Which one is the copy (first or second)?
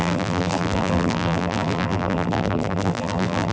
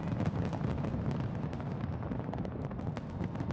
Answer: first